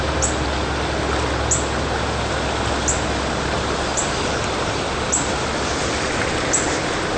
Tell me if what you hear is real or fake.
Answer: real